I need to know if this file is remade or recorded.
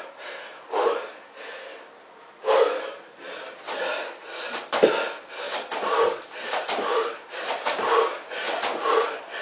remade